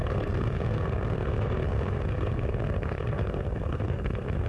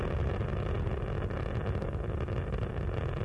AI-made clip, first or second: first